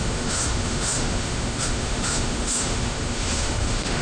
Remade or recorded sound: remade